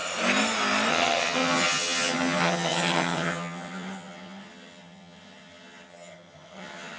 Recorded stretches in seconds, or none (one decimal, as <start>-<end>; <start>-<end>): 0.0-0.9